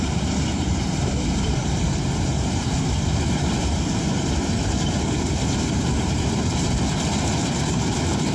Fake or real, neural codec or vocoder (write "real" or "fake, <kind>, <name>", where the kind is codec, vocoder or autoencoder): fake, vocoder, BigVGAN v2